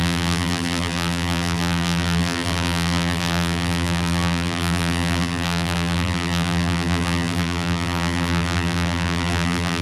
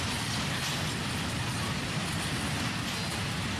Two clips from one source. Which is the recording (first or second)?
second